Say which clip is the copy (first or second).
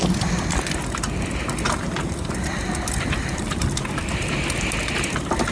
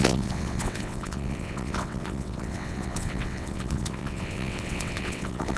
second